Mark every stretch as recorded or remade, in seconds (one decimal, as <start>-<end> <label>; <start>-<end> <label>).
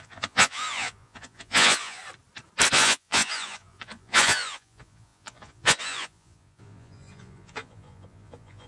0.0-2.0 remade; 2.0-2.7 recorded; 2.7-8.7 remade